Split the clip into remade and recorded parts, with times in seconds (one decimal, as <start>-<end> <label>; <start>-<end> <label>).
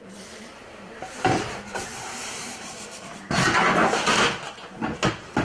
0.0-0.5 recorded; 0.5-3.4 remade; 3.4-5.4 recorded